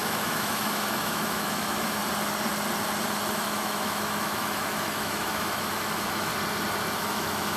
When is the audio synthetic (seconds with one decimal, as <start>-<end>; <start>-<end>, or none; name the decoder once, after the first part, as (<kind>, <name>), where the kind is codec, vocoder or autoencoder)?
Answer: 0.0-2.0 (autoencoder, DAC-VAE); 3.3-6.3; 7.0-7.6